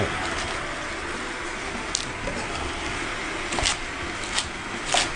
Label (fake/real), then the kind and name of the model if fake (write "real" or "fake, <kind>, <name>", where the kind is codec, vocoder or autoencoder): real